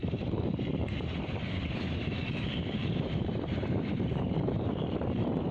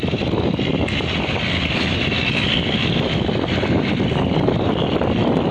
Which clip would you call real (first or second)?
second